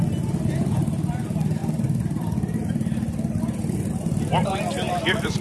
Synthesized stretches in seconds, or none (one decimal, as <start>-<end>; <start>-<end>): none